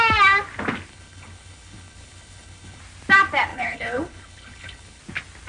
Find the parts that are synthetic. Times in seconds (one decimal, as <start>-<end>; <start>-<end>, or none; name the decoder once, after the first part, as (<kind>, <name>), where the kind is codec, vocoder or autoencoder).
0.9-2.8 (codec, HILCodec); 3.5-5.0